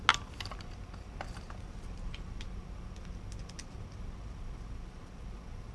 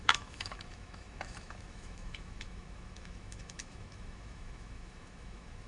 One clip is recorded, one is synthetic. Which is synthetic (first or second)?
second